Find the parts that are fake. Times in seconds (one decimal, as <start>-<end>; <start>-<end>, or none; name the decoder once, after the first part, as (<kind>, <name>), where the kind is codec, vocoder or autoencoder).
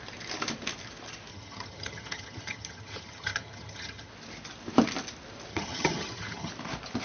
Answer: 1.3-4.1 (vocoder, HiFi-GAN); 5.5-6.5